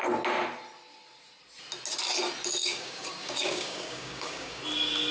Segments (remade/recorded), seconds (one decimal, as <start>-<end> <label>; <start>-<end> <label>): 0.0-2.6 recorded; 2.6-4.6 remade; 4.6-5.1 recorded